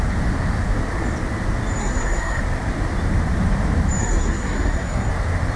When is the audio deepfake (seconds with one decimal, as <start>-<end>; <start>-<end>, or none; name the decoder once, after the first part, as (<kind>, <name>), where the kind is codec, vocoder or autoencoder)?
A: 1.8-2.4 (codec, SNAC); 4.0-5.1